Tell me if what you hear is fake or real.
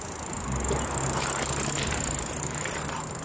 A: real